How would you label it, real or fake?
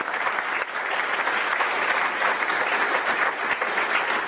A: real